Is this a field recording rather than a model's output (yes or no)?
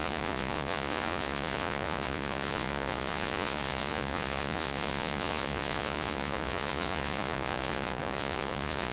no